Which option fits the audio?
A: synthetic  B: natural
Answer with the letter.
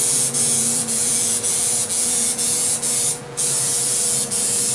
A